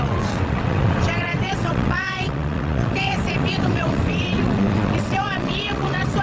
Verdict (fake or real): fake